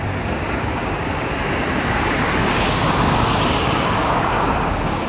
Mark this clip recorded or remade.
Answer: remade